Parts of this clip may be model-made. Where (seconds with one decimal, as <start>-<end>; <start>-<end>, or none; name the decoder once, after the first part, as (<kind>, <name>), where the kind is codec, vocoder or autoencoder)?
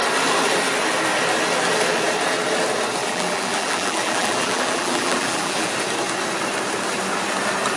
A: 3.0-5.7 (vocoder, BigVGAN v2)